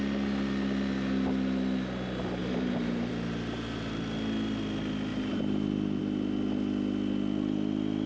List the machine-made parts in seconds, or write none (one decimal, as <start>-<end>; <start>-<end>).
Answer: 2.4-3.1; 5.1-6.0